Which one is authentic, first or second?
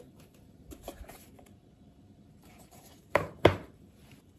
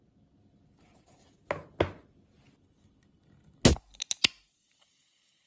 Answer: second